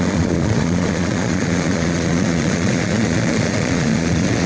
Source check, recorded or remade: remade